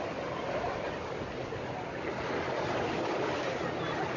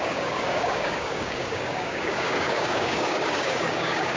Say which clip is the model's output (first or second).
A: second